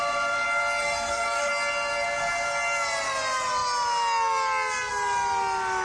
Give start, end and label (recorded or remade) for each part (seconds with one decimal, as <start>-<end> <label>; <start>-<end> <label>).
0.0-0.8 recorded; 0.8-1.5 remade; 1.5-5.8 recorded